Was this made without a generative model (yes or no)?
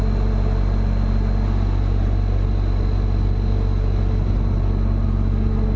yes